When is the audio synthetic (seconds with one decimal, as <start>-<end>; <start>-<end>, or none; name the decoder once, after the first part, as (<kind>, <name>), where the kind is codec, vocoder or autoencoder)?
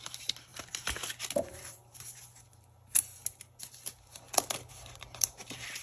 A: 0.0-3.1 (vocoder, BigVGAN v2); 4.7-5.8